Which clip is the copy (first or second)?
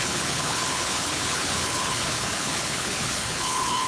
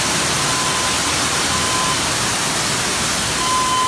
first